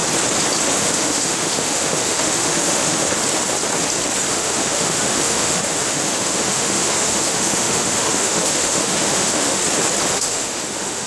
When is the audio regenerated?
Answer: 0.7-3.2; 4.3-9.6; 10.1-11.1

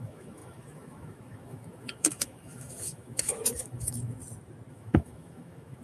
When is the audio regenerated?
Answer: 0.0-4.2; 4.7-5.8

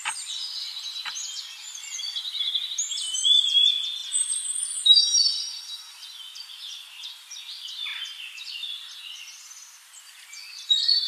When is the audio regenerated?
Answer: 1.7-11.1